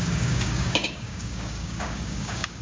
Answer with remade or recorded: remade